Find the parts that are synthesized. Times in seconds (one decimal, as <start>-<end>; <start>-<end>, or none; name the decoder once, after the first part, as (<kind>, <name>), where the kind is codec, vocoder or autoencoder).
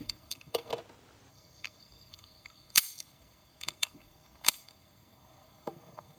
0.0-0.7 (codec, SNAC); 1.3-6.2